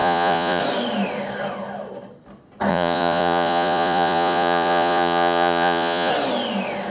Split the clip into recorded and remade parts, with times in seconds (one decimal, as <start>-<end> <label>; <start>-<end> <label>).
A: 0.0-0.6 remade; 0.6-2.7 recorded; 2.7-6.1 remade; 6.1-6.9 recorded